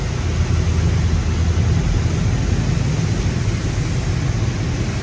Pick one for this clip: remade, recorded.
recorded